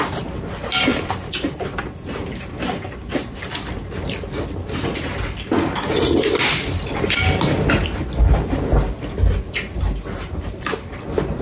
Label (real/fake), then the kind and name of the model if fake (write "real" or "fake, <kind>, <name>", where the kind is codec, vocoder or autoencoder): real